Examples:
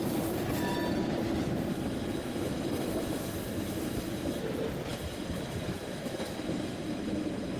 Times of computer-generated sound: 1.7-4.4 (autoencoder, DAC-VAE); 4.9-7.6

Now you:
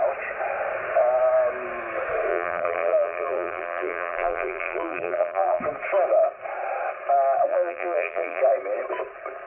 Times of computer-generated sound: 2.3-5.6 (vocoder, BigVGAN v2); 7.5-8.4

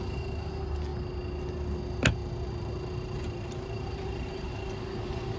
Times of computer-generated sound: 2.2-4.8 (vocoder, BigVGAN v2)

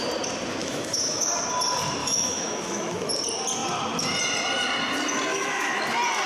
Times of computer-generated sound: 0.6-1.3 (autoencoder, DAC-VAE); 2.0-3.1; 5.3-5.8

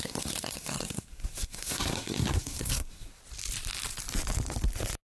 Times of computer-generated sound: 0.0-3.2 (codec, SNAC)